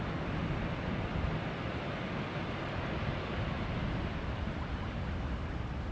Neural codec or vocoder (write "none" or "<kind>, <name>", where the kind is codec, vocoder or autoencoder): none